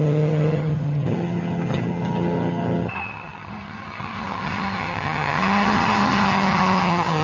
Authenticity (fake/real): fake